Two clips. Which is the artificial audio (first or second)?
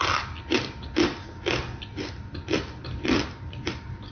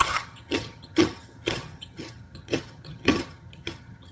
second